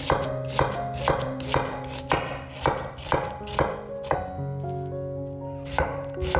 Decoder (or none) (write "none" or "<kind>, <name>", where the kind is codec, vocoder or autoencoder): none